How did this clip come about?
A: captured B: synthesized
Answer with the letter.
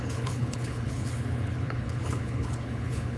B